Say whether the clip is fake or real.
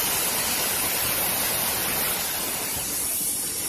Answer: real